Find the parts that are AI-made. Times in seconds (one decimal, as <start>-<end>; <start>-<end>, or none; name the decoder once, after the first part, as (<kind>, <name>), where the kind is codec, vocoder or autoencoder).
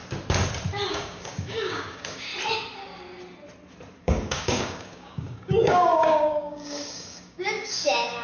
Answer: 0.9-2.3 (codec, DAC); 4.0-8.2